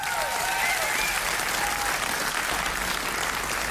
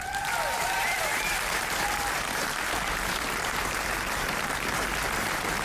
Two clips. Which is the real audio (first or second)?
first